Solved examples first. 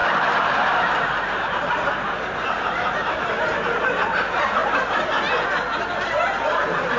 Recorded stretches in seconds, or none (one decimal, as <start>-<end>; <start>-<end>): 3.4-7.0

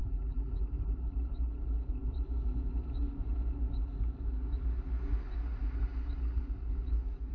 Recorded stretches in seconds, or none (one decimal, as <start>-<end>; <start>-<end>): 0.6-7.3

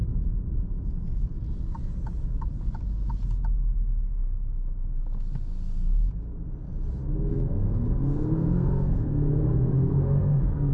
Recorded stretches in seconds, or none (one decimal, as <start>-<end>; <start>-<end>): 0.0-7.3

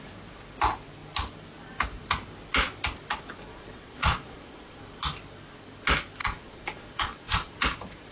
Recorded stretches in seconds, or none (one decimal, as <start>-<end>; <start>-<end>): 0.0-3.5; 4.8-6.2; 7.5-8.1